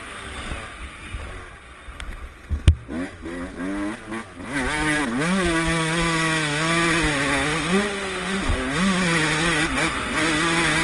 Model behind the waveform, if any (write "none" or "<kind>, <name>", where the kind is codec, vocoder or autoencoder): none